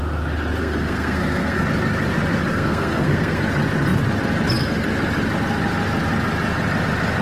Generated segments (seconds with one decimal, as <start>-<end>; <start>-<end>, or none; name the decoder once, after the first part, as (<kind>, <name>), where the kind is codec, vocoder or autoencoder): 0.6-1.6 (codec, SNAC); 2.5-3.4